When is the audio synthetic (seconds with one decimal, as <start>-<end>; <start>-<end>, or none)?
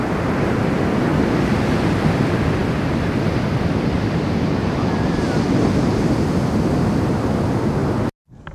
none